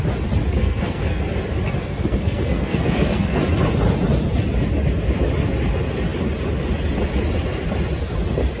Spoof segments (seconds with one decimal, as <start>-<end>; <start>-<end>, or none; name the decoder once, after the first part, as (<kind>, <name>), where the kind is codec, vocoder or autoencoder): 0.5-1.2 (codec, SNAC); 1.8-3.4